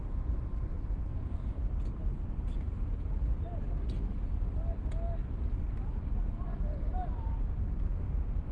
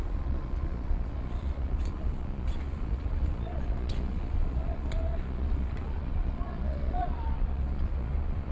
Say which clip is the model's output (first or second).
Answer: second